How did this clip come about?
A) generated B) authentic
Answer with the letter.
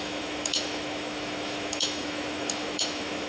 A